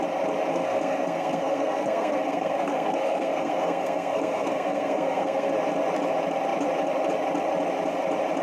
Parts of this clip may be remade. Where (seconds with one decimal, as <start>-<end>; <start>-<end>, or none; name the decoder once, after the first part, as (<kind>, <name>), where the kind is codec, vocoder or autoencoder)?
0.5-5.5 (codec, SNAC)